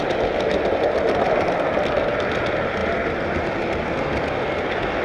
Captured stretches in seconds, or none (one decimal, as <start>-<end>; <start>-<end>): 0.0-5.0